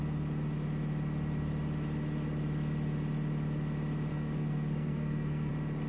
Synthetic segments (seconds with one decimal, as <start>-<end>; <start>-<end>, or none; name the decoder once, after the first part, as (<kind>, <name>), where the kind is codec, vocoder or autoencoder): 4.1-5.5 (codec, SNAC)